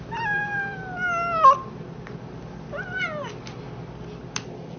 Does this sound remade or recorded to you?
recorded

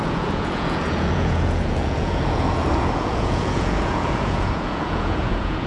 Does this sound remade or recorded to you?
remade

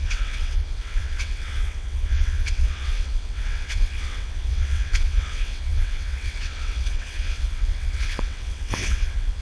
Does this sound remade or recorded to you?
remade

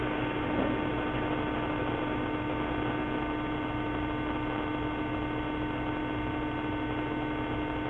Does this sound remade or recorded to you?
recorded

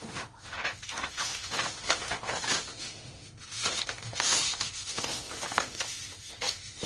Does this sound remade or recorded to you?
remade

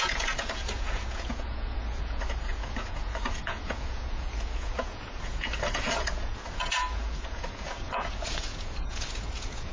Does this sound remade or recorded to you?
remade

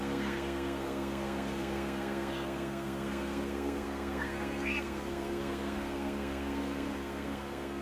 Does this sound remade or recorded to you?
remade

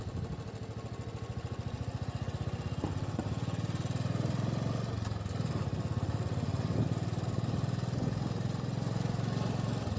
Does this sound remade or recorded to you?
recorded